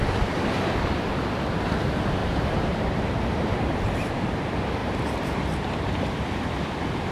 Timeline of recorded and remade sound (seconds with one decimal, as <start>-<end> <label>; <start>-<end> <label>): 0.0-2.2 recorded; 2.2-4.2 remade; 4.2-4.8 recorded; 4.8-5.8 remade; 5.8-7.1 recorded